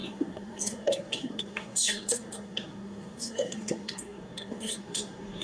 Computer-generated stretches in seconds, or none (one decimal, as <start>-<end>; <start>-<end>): 0.0-5.4